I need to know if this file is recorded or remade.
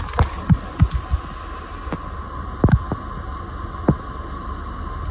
recorded